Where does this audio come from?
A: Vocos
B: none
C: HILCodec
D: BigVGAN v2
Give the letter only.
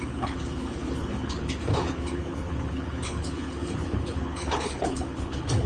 C